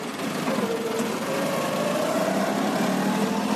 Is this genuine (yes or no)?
yes